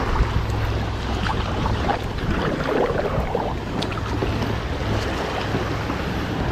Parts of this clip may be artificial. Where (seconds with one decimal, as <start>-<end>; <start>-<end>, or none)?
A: 1.3-1.9; 3.1-3.7